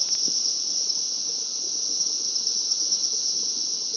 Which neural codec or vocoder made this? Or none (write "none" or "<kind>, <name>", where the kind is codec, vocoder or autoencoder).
none